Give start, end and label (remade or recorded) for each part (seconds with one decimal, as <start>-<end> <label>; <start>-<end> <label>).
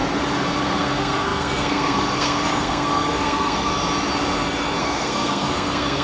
0.0-0.6 recorded; 0.6-3.7 remade; 3.7-4.8 recorded; 4.8-6.0 remade